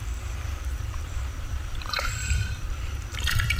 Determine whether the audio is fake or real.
fake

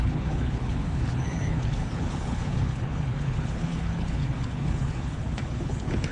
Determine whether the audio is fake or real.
fake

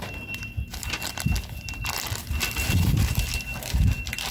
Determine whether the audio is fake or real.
real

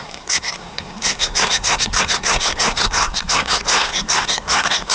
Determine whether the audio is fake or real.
fake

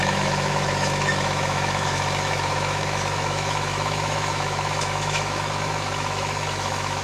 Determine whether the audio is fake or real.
fake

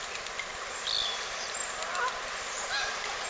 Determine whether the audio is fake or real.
real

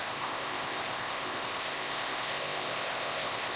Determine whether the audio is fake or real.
fake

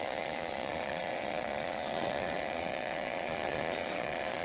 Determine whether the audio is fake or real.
fake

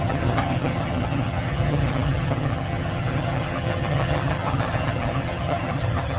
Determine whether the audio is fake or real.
fake